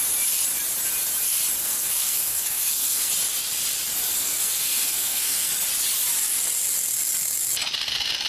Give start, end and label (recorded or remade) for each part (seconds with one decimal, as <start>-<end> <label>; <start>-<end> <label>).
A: 0.0-1.6 recorded; 1.6-3.1 remade; 3.1-4.2 recorded; 4.2-5.5 remade; 5.5-8.3 recorded